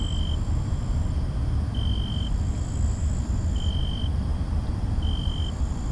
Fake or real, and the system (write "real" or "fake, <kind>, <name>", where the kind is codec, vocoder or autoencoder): real